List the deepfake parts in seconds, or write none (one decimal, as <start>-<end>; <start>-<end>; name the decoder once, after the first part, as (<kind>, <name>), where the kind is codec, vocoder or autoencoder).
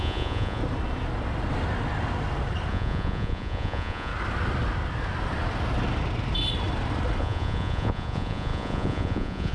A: 0.0-0.6 (vocoder, Vocos); 2.7-4.1; 7.2-9.5